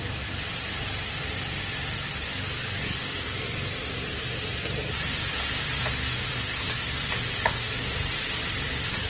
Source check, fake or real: real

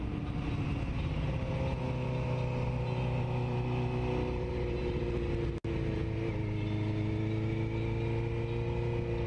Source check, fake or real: real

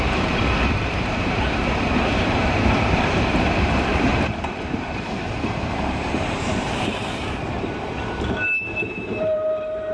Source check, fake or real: fake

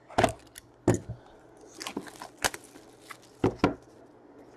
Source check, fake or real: real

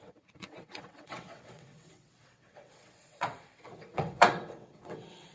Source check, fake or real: fake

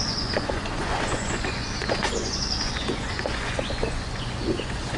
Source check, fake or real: fake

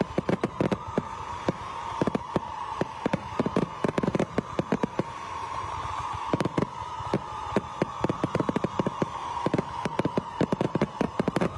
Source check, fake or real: fake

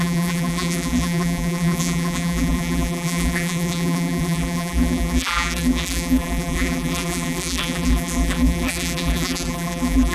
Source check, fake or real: fake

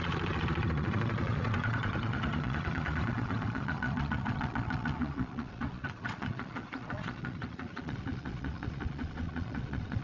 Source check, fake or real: fake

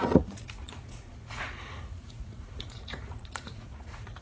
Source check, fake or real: fake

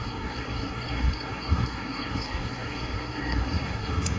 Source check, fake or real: fake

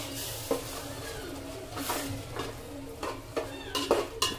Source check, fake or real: real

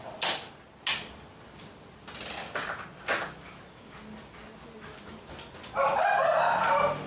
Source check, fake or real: real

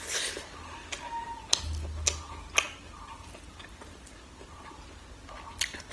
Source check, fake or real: real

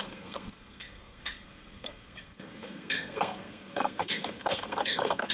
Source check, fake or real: fake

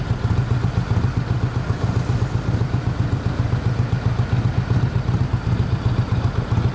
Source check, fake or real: real